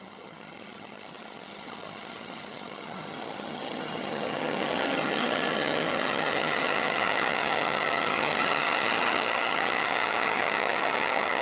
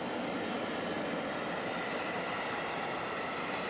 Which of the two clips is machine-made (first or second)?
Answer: first